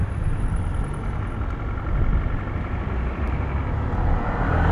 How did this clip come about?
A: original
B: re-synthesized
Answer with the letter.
A